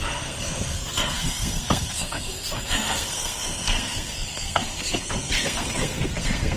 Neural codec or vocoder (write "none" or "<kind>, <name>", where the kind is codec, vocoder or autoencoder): codec, SNAC